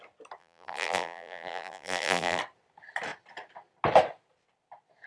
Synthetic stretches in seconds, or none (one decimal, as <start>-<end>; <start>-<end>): 0.4-2.4